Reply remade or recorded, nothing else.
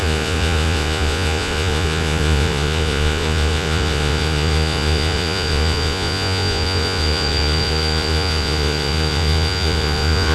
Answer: remade